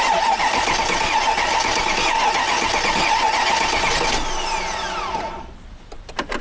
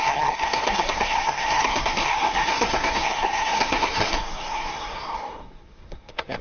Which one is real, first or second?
first